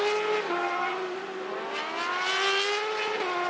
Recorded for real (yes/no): yes